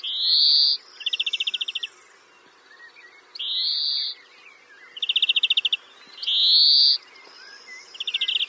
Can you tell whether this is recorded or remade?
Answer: recorded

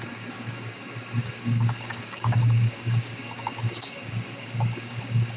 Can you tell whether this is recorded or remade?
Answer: remade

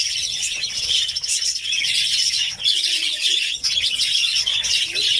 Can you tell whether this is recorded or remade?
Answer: remade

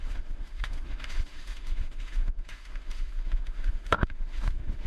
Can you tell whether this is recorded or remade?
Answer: remade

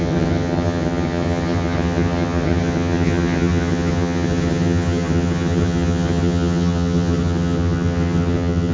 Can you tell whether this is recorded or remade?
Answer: remade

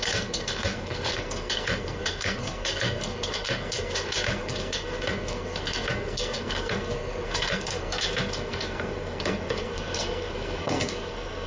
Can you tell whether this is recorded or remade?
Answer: remade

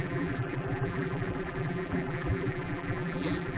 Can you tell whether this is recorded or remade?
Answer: remade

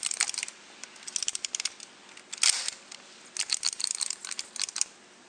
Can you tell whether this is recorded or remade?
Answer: recorded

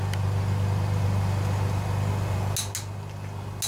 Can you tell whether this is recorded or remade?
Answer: recorded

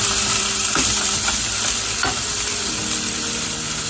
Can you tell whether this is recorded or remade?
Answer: remade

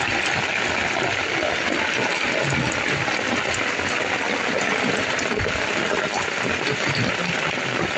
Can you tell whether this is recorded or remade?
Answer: recorded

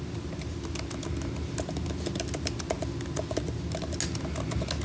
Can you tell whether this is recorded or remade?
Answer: recorded